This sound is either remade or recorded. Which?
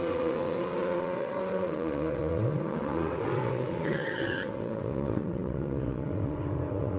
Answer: remade